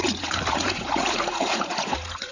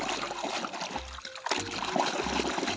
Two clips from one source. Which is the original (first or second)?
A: second